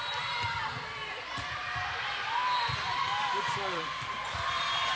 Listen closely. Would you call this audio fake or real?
fake